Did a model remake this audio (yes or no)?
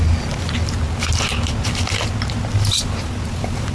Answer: no